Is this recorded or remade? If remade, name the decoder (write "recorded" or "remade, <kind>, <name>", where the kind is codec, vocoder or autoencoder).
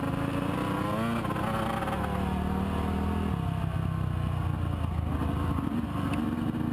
recorded